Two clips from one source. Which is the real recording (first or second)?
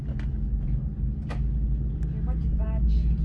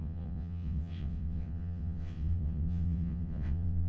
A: first